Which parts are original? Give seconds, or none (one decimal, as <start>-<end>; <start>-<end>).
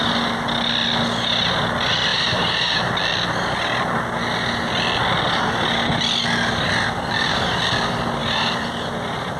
0.0-2.1; 2.9-8.2